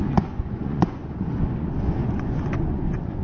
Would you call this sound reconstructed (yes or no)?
yes